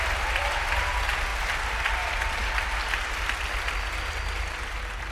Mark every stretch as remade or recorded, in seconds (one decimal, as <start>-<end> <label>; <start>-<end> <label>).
0.0-5.1 recorded